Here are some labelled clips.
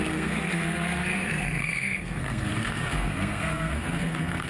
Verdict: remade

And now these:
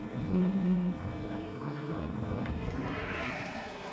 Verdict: remade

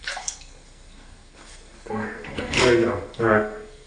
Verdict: remade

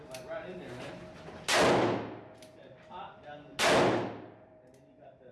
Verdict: recorded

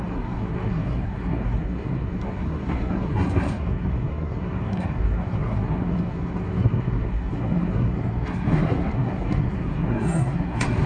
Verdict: remade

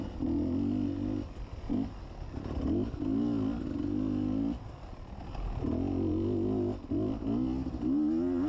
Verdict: recorded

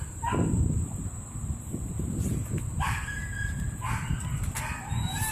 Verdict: recorded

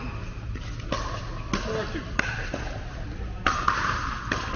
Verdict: recorded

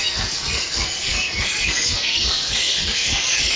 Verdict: remade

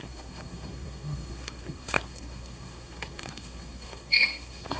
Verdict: remade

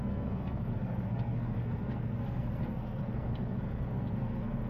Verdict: remade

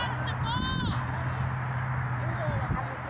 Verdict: recorded